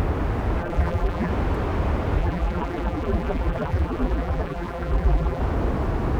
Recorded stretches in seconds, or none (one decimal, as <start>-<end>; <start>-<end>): 0.0-0.6; 1.3-2.2; 5.4-6.2